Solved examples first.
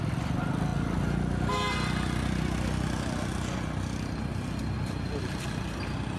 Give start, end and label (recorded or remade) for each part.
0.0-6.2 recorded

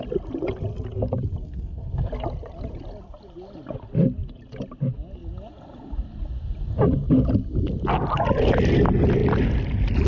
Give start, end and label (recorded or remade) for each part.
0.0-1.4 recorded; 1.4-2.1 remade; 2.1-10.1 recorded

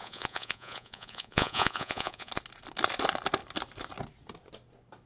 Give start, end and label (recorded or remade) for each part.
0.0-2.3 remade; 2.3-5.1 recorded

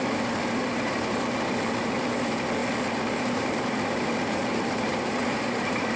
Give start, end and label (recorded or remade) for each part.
0.0-2.6 remade; 2.6-3.1 recorded; 3.1-6.0 remade

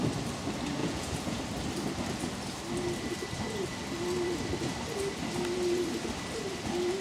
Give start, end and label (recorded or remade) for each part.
0.0-0.8 recorded; 0.8-1.4 remade; 1.4-7.0 recorded